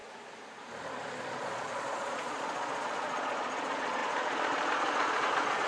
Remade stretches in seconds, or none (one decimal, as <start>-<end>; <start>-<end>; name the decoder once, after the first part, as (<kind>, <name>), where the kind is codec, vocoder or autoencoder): 1.2-5.7 (vocoder, Vocos)